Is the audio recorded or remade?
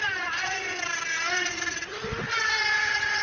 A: recorded